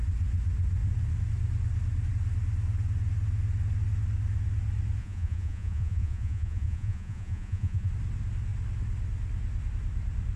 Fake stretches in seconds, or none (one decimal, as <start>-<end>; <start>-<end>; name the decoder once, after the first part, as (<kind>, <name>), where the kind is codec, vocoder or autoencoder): 5.0-7.9 (vocoder, Vocos)